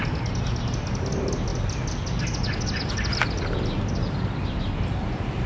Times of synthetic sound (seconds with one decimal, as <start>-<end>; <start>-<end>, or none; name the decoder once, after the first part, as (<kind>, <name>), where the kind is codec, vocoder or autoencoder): none